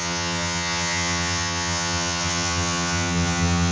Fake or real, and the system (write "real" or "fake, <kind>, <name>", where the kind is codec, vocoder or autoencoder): fake, vocoder, HiFi-GAN